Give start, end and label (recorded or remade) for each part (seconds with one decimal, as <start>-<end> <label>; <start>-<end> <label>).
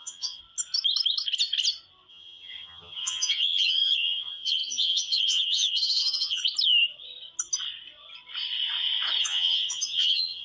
0.0-0.4 remade; 0.4-2.1 recorded; 2.1-6.4 remade; 6.4-9.2 recorded; 9.2-10.4 remade